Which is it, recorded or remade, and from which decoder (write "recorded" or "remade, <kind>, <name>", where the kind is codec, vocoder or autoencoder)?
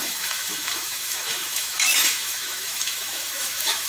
remade, autoencoder, DAC-VAE